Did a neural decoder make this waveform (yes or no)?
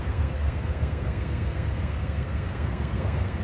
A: yes